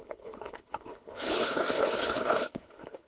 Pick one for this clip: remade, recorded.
remade